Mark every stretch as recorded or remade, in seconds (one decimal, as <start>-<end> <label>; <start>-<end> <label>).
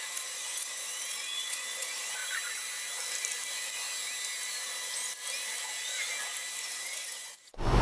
0.0-2.2 remade; 2.2-6.6 recorded; 6.6-7.8 remade